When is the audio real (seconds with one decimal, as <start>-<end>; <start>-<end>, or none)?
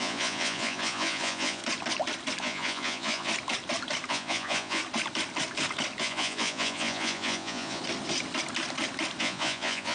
1.6-2.4; 3.3-4.1; 4.8-6.0; 7.8-9.2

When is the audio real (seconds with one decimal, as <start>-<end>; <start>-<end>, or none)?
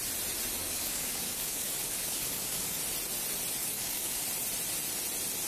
0.0-0.6; 2.8-3.6; 4.2-5.5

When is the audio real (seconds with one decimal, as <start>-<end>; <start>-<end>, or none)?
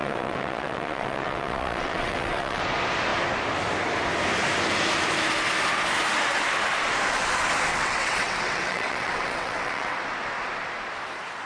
2.6-7.7; 10.0-11.5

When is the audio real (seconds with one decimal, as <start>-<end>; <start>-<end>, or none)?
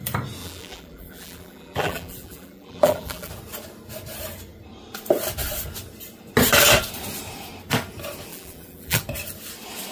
0.0-0.4; 3.3-8.3; 9.0-9.9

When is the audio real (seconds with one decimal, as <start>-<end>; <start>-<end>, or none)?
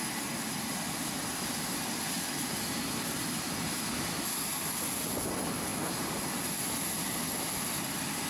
0.0-8.3